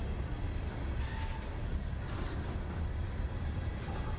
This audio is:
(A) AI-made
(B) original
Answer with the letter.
B